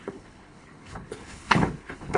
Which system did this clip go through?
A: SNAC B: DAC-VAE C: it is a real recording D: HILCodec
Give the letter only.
D